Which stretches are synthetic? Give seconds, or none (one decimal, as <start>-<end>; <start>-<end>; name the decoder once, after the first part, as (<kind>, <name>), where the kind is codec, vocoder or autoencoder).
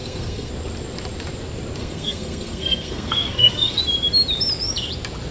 0.0-0.5 (codec, SNAC); 1.8-3.8